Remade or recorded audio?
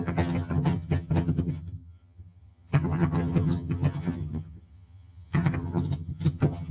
remade